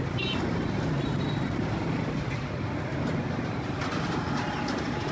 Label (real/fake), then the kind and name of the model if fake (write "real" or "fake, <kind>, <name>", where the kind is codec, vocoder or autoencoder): real